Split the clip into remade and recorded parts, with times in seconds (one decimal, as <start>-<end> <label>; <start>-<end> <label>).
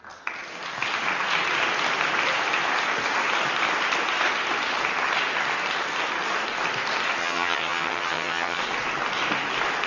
0.0-7.2 recorded; 7.2-8.6 remade; 8.6-9.9 recorded